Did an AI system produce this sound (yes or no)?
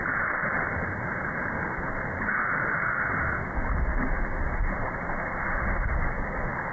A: no